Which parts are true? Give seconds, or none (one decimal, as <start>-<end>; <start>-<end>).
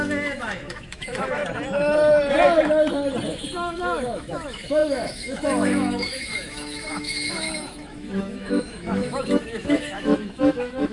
1.4-3.3